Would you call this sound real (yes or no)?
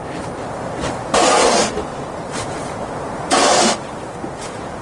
yes